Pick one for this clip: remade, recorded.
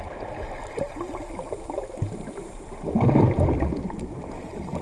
recorded